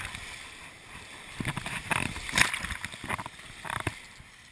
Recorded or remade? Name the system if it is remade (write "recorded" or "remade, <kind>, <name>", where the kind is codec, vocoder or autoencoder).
recorded